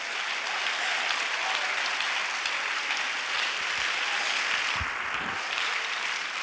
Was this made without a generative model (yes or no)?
yes